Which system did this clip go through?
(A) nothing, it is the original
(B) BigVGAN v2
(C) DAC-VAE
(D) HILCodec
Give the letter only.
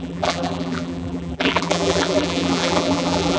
B